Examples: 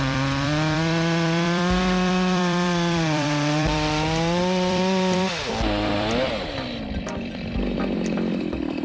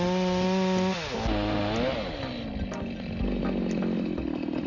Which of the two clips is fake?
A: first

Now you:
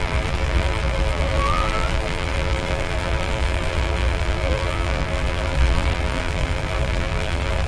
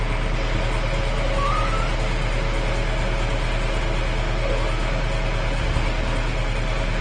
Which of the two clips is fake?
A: first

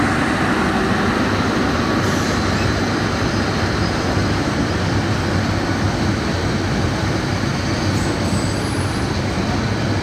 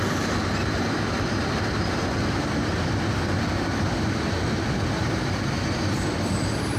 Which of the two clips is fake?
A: second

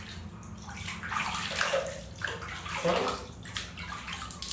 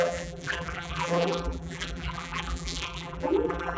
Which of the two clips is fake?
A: second